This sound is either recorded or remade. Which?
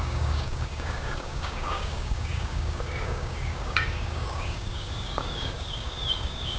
remade